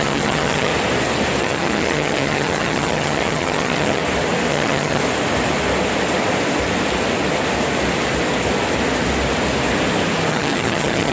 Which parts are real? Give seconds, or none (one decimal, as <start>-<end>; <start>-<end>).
0.7-1.4; 4.0-4.5; 5.0-10.3